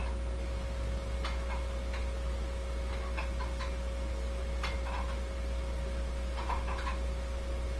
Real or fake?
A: real